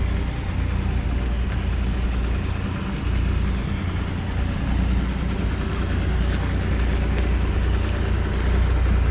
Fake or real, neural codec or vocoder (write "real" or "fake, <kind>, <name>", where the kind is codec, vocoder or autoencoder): real